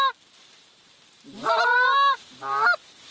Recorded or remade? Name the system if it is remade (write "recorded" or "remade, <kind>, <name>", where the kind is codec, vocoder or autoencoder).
remade, vocoder, BigVGAN v2